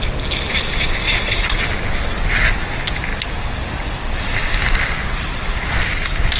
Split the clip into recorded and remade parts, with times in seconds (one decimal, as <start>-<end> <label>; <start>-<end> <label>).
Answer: 0.0-1.0 recorded; 1.0-1.7 remade; 1.7-6.4 recorded